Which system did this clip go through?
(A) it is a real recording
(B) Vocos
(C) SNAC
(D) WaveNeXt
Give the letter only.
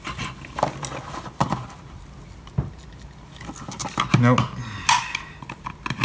A